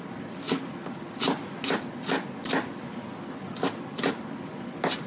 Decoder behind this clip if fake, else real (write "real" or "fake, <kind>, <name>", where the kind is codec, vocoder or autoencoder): real